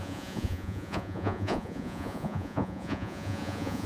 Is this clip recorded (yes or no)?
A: no